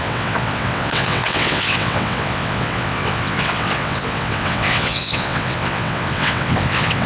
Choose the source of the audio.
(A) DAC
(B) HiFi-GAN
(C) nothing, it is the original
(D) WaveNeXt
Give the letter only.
D